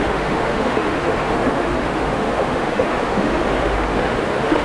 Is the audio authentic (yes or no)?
no